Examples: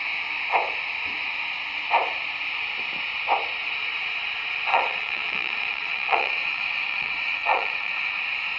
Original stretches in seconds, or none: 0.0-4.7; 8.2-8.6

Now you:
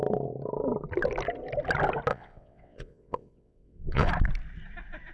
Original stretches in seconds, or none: 0.0-2.1; 4.1-5.1

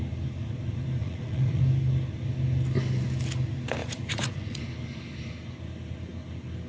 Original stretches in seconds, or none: 0.0-1.0; 1.6-3.8; 4.6-6.7